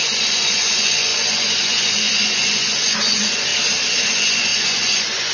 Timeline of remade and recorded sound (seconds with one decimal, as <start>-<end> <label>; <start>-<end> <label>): 0.0-3.5 remade; 3.5-4.1 recorded; 4.1-5.3 remade